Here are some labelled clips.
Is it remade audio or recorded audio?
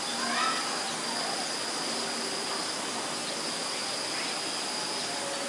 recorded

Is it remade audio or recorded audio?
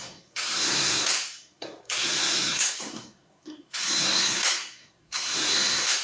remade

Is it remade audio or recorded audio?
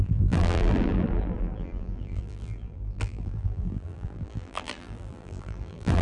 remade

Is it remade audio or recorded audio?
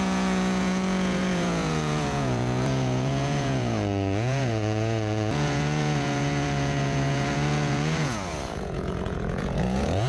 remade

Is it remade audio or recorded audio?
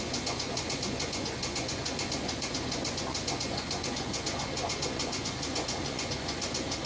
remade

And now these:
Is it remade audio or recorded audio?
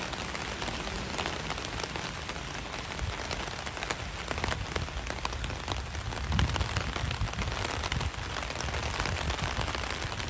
recorded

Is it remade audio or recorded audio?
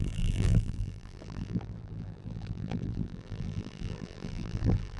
remade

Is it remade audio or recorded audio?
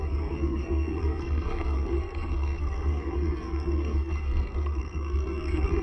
remade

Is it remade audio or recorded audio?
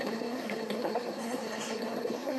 remade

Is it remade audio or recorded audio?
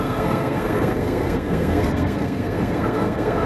remade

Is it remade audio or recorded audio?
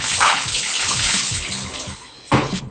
remade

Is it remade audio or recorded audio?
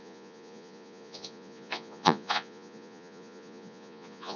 remade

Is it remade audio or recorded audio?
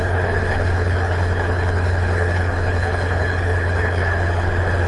remade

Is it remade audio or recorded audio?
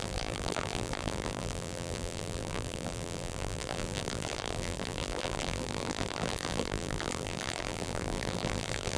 remade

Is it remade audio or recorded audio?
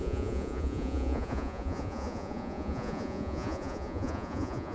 remade